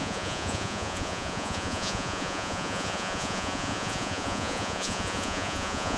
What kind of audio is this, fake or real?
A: fake